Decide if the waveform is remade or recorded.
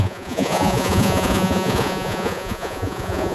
remade